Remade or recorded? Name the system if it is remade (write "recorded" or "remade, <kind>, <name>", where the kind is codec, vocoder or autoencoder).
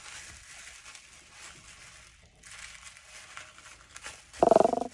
recorded